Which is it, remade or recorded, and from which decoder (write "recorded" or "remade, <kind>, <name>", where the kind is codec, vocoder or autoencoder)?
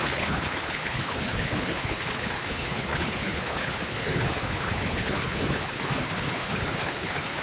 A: remade, codec, HILCodec